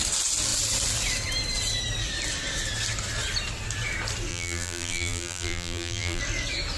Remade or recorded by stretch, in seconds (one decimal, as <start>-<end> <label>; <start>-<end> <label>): 0.0-4.3 recorded; 4.3-6.2 remade; 6.2-6.8 recorded